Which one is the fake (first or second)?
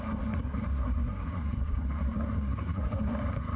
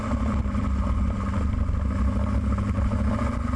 first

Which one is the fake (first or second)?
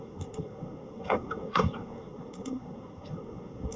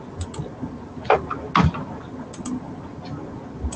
first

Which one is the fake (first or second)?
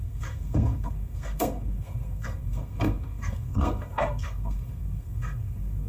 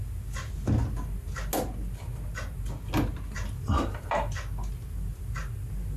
first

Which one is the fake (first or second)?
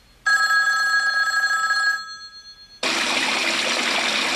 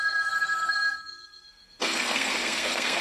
second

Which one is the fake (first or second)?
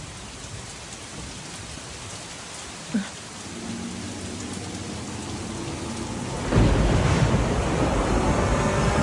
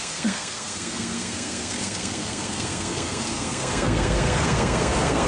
second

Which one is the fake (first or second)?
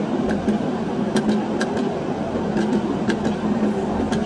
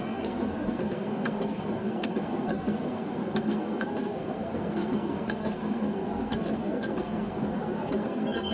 second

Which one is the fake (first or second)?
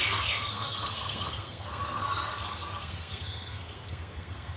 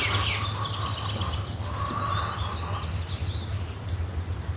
first